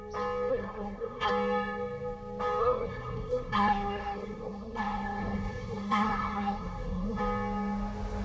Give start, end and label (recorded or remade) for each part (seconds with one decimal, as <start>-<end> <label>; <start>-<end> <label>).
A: 0.0-0.5 recorded; 0.5-1.3 remade; 1.3-2.6 recorded; 2.6-7.2 remade; 7.2-8.2 recorded